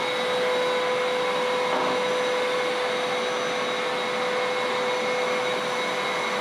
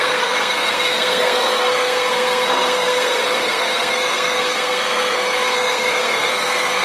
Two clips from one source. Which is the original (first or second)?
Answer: first